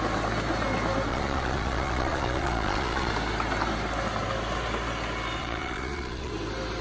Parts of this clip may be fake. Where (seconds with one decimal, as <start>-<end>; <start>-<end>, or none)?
1.1-3.1; 5.4-6.3